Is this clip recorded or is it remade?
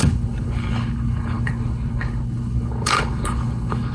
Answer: remade